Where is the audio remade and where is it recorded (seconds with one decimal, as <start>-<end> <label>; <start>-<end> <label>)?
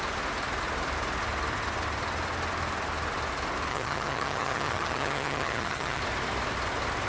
0.0-3.7 recorded; 3.7-6.0 remade; 6.0-7.1 recorded